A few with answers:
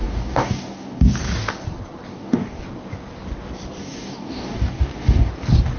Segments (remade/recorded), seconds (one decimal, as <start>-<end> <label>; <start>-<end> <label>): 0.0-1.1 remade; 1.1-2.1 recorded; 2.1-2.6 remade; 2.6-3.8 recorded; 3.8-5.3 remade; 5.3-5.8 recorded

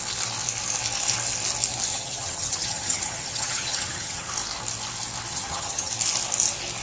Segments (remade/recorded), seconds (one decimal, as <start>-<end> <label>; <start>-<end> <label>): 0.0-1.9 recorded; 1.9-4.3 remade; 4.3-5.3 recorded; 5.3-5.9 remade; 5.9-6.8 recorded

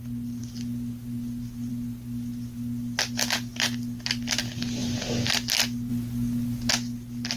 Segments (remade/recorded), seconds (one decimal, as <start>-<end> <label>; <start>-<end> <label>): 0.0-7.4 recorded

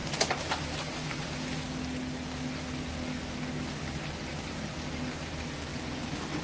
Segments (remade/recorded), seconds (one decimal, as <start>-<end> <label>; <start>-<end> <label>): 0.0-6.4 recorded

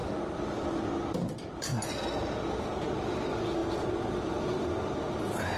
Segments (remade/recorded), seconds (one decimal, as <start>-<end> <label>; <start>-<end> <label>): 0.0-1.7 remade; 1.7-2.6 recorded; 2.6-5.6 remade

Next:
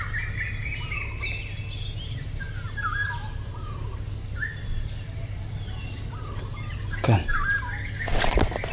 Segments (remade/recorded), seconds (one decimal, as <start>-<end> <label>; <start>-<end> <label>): 0.0-8.7 recorded

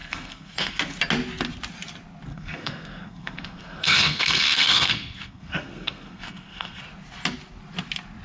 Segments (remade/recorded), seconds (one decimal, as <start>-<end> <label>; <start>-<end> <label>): 0.0-0.8 remade; 0.8-2.3 recorded; 2.3-6.8 remade; 6.8-8.2 recorded

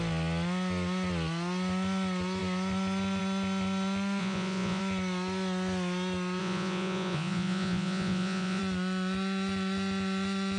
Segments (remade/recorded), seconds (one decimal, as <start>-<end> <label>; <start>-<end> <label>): 0.0-4.2 recorded; 4.2-4.8 remade; 4.8-6.4 recorded; 6.4-8.6 remade; 8.6-10.6 recorded